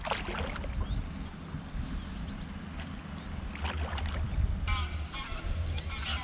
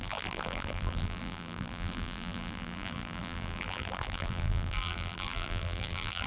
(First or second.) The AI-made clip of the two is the second